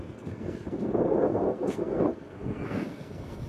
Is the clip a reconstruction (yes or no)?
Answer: yes